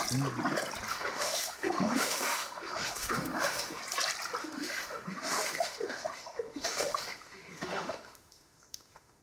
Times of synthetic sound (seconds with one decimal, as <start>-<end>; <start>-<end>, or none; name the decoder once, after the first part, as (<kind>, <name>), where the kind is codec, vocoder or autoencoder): 0.9-3.8 (autoencoder, DAC-VAE); 4.4-9.2